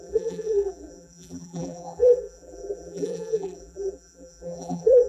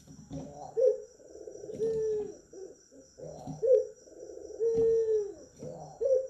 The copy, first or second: first